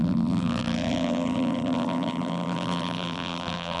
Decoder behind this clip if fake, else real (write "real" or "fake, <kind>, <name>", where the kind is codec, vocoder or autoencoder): fake, vocoder, BigVGAN v2